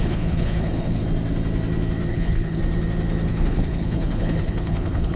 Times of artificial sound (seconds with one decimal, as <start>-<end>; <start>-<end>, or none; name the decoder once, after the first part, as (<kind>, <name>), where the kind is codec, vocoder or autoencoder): 0.0-1.0 (codec, HILCodec); 2.1-2.6; 3.3-5.2